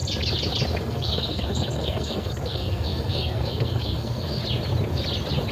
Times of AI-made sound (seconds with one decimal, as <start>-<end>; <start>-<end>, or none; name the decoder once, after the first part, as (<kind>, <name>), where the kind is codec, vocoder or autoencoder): 0.8-4.4 (codec, SNAC)